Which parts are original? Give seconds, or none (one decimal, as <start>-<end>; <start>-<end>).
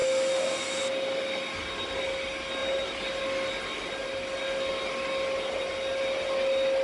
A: 0.0-6.8